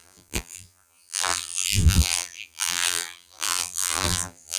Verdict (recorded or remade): remade